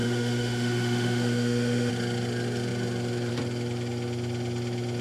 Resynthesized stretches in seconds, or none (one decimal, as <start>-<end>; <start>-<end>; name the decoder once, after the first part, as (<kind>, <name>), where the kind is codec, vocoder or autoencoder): 0.0-1.9 (autoencoder, DAC-VAE)